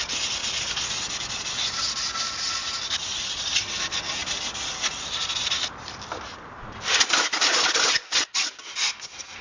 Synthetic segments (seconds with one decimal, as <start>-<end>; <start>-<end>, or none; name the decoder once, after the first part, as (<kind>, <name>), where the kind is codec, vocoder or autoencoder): 0.4-3.6 (vocoder, BigVGAN v2)